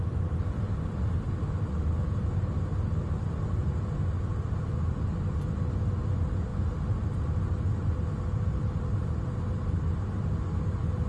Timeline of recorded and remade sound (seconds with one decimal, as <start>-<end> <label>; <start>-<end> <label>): 0.0-11.1 recorded